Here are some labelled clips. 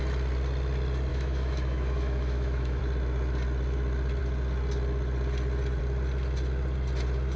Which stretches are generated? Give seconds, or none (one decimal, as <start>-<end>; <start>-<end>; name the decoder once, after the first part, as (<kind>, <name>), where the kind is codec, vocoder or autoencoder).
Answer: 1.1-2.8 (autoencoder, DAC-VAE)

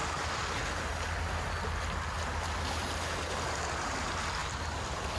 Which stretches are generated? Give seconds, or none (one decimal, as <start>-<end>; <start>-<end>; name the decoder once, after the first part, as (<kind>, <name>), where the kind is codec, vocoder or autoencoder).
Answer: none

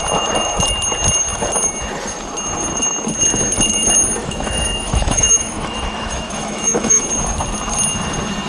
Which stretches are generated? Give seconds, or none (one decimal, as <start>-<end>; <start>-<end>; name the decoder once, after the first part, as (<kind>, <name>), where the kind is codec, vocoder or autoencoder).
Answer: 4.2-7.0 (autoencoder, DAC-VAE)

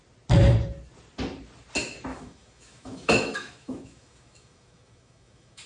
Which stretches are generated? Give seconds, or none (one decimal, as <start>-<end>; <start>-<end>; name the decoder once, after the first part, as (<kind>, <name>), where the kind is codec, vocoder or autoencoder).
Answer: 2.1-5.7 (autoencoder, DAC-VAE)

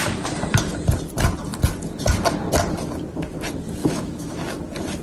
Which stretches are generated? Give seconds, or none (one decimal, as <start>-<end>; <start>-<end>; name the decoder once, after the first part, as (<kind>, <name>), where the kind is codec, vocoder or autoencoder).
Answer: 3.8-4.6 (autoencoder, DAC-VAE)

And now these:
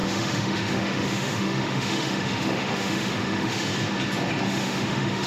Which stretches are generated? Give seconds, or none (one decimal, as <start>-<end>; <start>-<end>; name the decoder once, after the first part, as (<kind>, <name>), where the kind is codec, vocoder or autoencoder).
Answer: 0.0-3.7 (autoencoder, DAC-VAE); 4.5-5.3

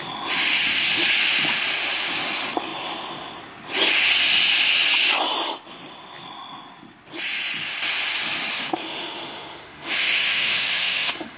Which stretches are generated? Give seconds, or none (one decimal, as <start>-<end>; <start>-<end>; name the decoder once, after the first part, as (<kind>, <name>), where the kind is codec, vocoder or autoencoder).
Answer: 8.5-11.4 (autoencoder, DAC-VAE)

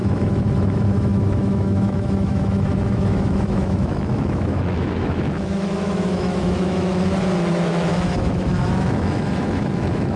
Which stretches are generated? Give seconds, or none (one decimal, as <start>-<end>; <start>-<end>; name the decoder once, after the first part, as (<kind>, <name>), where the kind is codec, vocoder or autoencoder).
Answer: 0.0-6.9 (autoencoder, DAC-VAE); 7.5-10.2